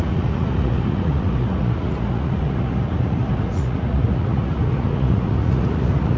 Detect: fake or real fake